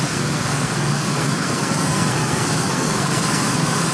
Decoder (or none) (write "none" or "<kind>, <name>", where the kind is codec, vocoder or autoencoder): codec, SNAC